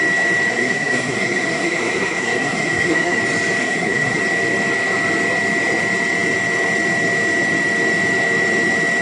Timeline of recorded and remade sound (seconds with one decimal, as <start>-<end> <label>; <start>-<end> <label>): 0.0-0.5 recorded; 0.5-3.2 remade; 3.2-3.6 recorded; 3.6-4.2 remade; 4.2-9.0 recorded